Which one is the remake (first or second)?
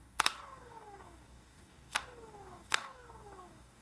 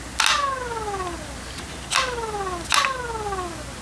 first